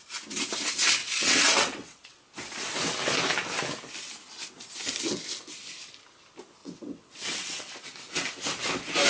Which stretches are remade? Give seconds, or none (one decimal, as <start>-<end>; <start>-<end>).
1.0-2.2; 6.6-7.7